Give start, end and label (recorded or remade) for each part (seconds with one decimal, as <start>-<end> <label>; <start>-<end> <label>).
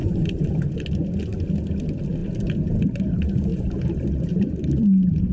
0.0-0.6 remade; 0.6-3.5 recorded; 3.5-5.3 remade